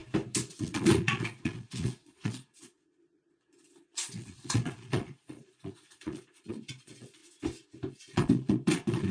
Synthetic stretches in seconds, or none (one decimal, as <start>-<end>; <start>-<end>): 0.5-7.2; 7.9-9.1